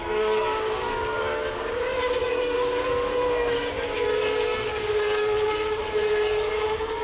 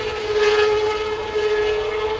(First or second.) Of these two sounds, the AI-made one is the first